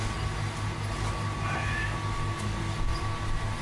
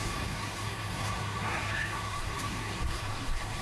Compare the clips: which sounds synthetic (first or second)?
second